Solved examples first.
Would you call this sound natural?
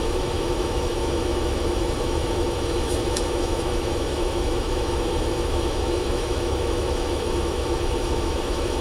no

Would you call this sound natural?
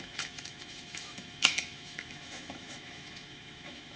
no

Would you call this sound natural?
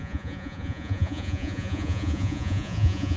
no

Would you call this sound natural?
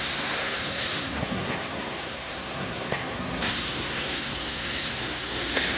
no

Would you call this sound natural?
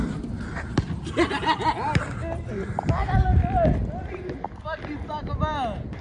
yes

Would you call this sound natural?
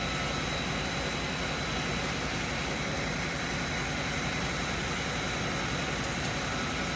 yes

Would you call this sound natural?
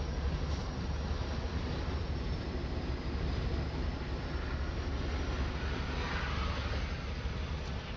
yes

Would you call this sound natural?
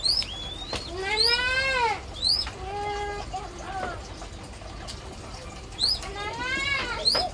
yes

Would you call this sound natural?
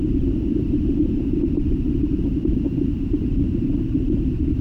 no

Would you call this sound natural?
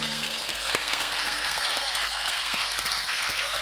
no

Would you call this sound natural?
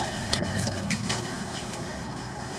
no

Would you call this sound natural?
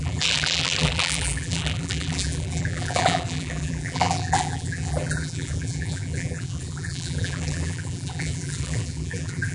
no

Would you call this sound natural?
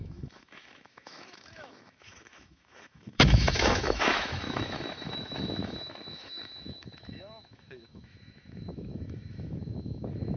no